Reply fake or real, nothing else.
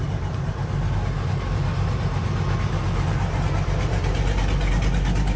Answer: real